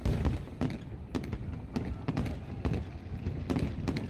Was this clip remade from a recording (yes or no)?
no